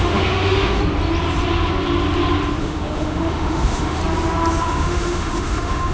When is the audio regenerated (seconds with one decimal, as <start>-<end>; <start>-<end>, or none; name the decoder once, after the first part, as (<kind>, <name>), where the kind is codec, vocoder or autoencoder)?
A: 0.0-0.8 (autoencoder, DAC-VAE); 2.6-4.0; 4.6-5.9